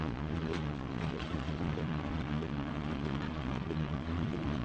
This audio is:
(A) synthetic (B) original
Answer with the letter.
A